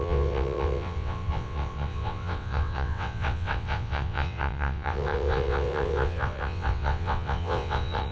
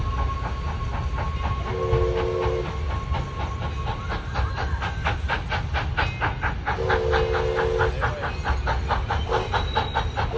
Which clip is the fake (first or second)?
first